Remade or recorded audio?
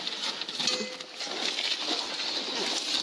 recorded